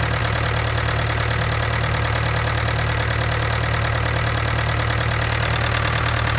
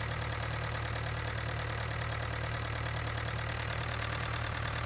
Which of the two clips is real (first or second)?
first